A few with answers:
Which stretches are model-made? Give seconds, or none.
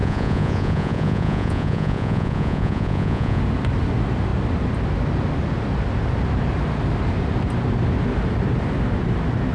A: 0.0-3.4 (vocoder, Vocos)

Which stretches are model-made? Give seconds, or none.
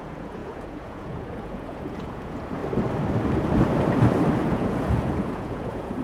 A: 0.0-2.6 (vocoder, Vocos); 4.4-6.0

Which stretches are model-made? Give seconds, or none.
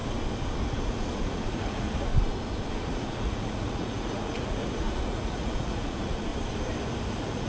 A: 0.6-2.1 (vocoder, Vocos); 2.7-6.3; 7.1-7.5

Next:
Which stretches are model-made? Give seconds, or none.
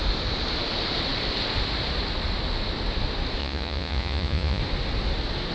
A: 3.4-4.6 (vocoder, Vocos)